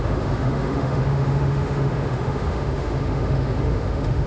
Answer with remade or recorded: remade